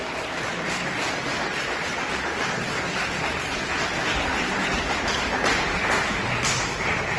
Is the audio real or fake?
real